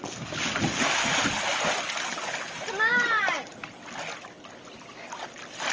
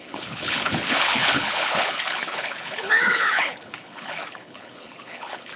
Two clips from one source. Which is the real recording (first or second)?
first